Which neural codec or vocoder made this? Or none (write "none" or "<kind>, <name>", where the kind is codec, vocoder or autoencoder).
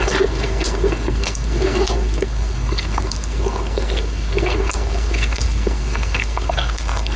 codec, SNAC